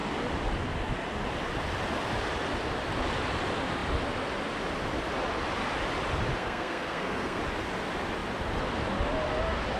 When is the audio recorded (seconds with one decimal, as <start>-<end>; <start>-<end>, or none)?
0.0-6.4; 7.4-9.8